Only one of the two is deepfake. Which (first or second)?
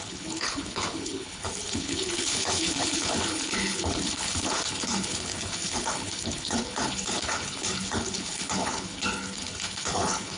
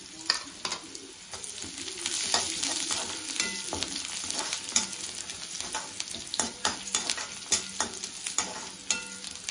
first